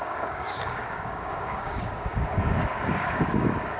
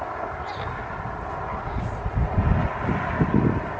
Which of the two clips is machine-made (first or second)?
first